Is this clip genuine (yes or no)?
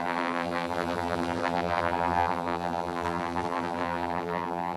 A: no